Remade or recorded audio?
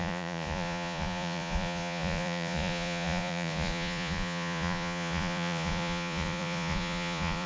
remade